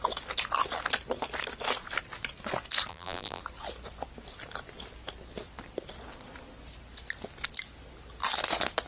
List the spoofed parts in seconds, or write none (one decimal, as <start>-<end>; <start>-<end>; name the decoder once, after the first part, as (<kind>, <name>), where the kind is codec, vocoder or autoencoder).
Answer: 2.9-3.4 (vocoder, BigVGAN v2)